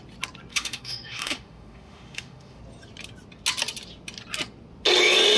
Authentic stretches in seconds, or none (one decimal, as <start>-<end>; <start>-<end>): 0.0-0.5; 2.6-5.4